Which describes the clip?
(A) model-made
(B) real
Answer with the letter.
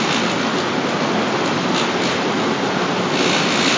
B